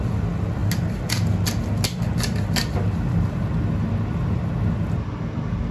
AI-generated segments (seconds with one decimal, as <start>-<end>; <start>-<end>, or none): none